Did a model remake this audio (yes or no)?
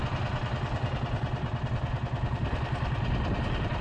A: no